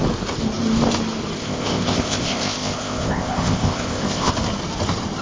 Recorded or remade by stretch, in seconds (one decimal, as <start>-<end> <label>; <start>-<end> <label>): 0.0-1.4 recorded; 1.4-4.3 remade; 4.3-5.2 recorded